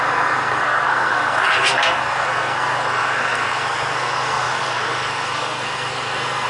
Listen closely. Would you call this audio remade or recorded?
remade